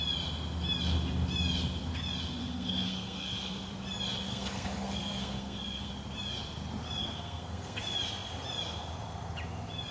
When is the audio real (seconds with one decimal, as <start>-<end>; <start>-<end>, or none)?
0.0-2.4; 3.7-4.3; 5.9-7.0; 7.8-9.9